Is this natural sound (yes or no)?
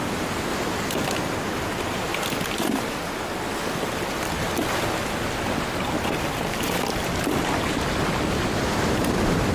yes